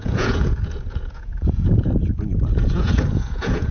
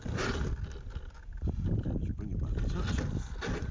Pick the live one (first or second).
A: second